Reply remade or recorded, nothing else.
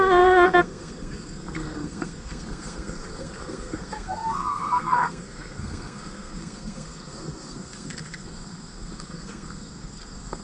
remade